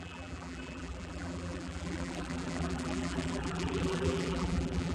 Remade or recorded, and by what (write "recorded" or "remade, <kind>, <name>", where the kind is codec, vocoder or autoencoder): remade, vocoder, BigVGAN v2